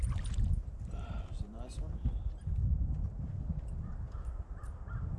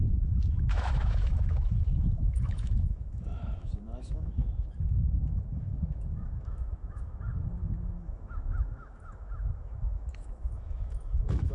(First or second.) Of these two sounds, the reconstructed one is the second